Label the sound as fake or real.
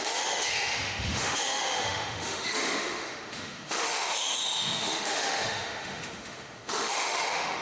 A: fake